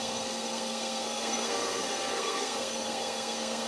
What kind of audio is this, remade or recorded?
remade